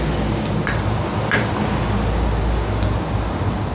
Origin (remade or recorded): recorded